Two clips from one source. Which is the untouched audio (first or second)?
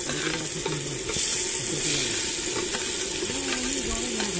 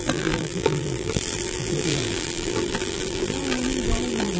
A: first